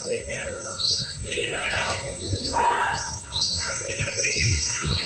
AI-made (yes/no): yes